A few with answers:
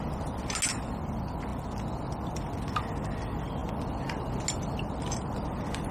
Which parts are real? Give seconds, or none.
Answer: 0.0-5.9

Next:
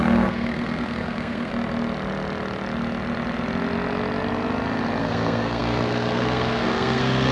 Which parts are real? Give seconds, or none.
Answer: 1.5-5.0